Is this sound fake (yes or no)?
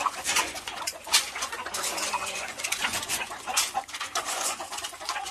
yes